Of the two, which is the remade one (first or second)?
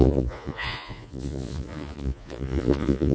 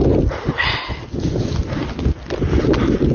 first